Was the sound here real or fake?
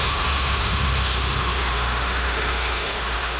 fake